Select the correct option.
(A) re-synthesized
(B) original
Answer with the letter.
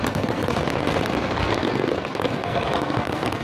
A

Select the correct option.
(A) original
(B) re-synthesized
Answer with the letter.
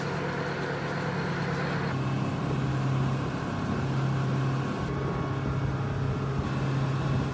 A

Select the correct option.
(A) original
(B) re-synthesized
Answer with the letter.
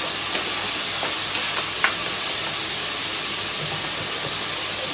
A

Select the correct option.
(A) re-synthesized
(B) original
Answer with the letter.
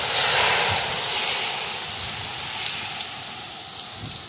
B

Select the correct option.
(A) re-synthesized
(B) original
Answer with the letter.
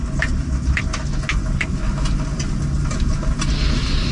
B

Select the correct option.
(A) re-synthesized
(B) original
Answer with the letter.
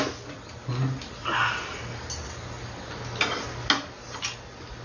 B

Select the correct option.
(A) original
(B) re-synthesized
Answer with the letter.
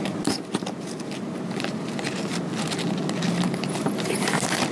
A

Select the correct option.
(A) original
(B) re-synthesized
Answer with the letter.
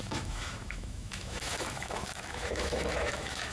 B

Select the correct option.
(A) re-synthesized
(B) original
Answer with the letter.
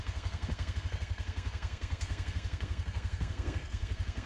A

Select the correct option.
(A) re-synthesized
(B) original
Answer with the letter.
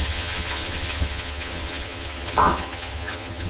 A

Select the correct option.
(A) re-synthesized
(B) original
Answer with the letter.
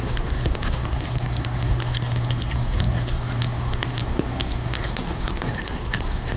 A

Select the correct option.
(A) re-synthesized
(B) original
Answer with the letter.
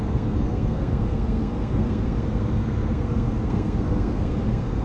A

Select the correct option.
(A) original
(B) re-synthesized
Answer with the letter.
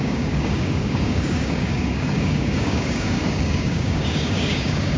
B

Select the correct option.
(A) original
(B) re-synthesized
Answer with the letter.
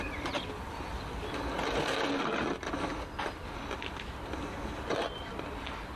A